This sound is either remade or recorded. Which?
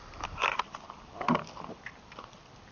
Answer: recorded